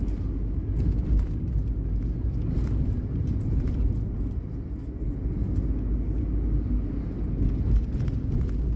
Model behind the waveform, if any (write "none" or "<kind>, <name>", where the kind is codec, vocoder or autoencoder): none